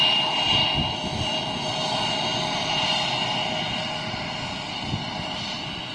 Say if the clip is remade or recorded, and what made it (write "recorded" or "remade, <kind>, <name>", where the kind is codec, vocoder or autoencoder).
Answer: recorded